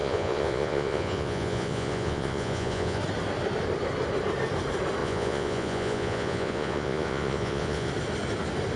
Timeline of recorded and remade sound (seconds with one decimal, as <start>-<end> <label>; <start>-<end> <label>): 0.0-3.0 remade; 3.0-5.0 recorded; 5.0-7.9 remade; 7.9-8.8 recorded